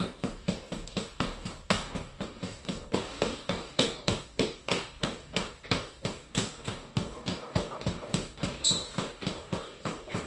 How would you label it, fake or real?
fake